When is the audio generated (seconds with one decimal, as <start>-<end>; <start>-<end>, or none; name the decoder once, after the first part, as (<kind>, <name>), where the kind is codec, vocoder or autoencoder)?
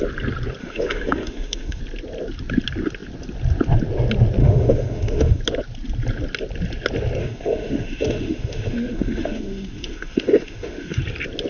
0.6-1.8 (autoencoder, DAC-VAE); 4.4-5.4; 7.2-11.0